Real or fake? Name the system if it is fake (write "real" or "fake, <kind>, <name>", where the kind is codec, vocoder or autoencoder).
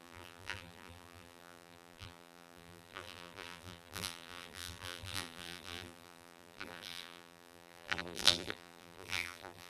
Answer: fake, vocoder, BigVGAN v2